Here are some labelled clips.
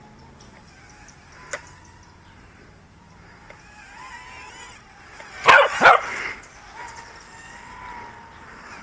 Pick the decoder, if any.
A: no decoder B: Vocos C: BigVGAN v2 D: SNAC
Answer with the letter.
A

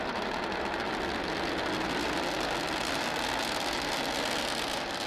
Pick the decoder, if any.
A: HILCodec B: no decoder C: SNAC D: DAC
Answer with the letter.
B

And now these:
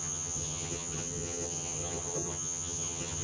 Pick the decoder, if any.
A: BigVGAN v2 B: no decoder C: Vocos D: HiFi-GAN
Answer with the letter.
D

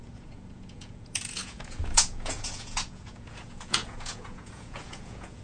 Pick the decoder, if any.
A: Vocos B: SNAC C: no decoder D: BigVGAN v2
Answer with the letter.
A